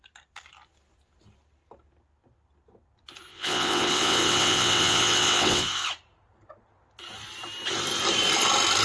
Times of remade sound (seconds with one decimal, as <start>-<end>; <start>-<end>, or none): 3.3-5.9